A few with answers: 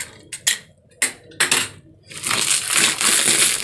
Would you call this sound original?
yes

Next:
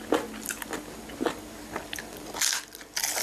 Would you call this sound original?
yes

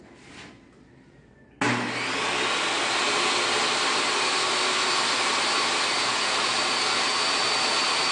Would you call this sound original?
yes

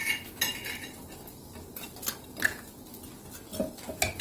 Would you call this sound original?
yes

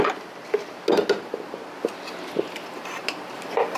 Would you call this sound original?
yes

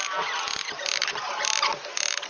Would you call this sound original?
yes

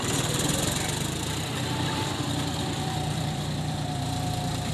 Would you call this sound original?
no